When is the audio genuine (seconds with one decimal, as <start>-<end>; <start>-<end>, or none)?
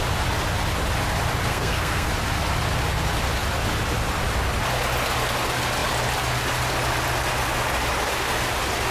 0.0-1.5; 2.1-8.9